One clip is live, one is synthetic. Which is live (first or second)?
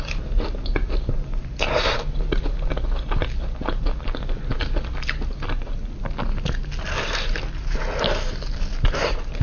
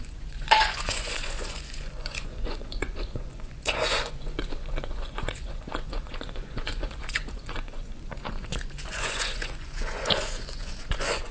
first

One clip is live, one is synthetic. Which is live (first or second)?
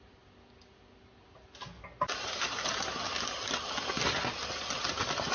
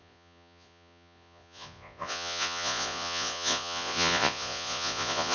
first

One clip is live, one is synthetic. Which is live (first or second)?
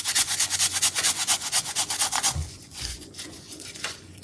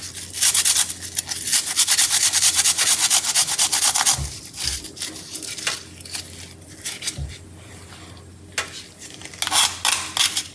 second